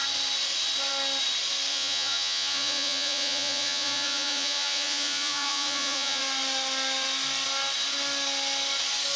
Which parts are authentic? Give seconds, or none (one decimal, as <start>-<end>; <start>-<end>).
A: 0.0-1.7; 6.2-9.2